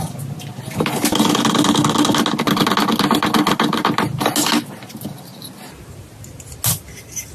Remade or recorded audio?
recorded